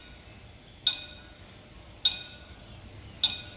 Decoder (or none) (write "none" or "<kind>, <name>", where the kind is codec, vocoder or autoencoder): none